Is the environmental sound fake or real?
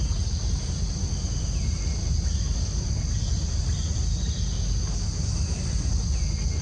real